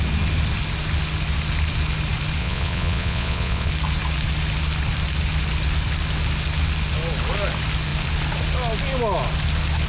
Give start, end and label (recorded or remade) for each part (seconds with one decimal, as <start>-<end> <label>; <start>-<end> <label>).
0.0-2.4 recorded; 2.4-3.7 remade; 3.7-9.9 recorded